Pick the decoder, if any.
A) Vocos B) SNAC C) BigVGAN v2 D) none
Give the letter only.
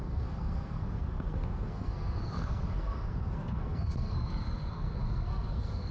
B